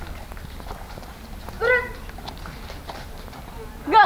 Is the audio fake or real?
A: real